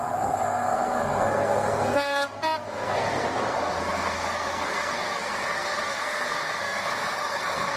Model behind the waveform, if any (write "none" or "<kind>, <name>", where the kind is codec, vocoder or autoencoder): codec, SNAC